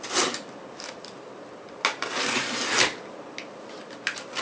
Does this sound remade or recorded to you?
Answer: recorded